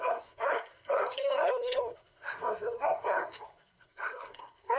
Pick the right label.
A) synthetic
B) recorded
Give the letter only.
A